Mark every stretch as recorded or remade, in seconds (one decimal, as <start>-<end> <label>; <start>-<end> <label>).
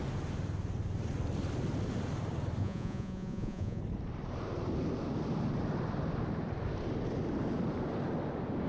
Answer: 0.0-2.6 recorded; 2.6-3.8 remade; 3.8-8.7 recorded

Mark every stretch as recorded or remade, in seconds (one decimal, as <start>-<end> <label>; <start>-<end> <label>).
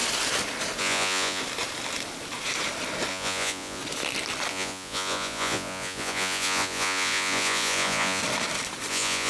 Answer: 0.0-0.8 recorded; 0.8-1.4 remade; 1.4-3.1 recorded; 3.1-3.8 remade; 3.8-4.5 recorded; 4.5-8.2 remade; 8.2-8.9 recorded; 8.9-9.3 remade